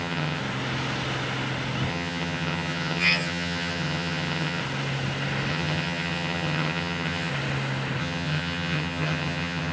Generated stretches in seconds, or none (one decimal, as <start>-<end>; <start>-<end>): 0.0-0.4; 1.9-4.6; 5.5-7.3; 8.0-9.7